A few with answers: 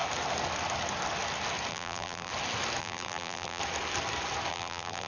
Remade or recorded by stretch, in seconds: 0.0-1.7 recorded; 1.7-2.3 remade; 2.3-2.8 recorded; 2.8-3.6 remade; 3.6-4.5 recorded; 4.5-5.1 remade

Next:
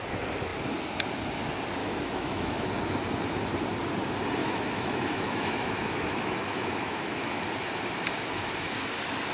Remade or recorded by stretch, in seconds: 0.0-1.8 recorded; 1.8-2.7 remade; 2.7-4.4 recorded; 4.4-7.4 remade; 7.4-9.3 recorded

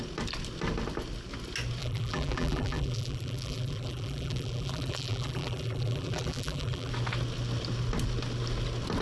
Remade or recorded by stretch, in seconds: 0.0-1.8 recorded; 1.8-6.9 remade; 6.9-9.0 recorded